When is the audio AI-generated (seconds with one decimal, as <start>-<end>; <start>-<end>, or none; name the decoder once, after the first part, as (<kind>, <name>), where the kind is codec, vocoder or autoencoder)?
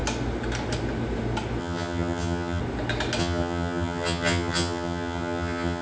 1.6-2.6 (vocoder, HiFi-GAN); 3.2-5.8